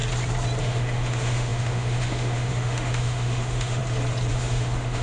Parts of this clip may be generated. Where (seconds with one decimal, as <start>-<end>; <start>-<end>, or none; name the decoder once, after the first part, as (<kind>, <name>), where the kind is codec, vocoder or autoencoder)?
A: 0.6-3.8 (autoencoder, DAC-VAE); 4.3-5.0

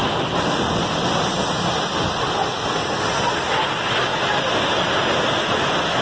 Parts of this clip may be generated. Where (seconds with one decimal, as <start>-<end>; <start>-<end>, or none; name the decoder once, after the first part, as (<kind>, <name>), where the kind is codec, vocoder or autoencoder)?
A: 0.0-1.3 (vocoder, BigVGAN v2)

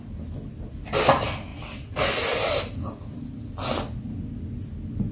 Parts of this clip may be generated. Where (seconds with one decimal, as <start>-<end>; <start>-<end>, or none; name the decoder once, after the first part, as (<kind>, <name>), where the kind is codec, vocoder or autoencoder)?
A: none

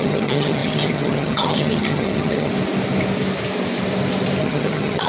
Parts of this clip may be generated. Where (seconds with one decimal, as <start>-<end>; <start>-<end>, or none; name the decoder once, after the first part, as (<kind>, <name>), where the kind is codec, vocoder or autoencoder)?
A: 0.0-2.5 (vocoder, HiFi-GAN); 4.4-5.1

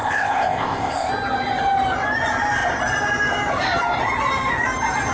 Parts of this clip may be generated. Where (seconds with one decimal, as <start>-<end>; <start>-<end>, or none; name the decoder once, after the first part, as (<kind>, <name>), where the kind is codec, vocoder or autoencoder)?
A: 0.0-1.1 (codec, ZipCodec)

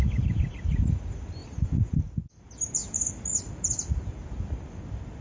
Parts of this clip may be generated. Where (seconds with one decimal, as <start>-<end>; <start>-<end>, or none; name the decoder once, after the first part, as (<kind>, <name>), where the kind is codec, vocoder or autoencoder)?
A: none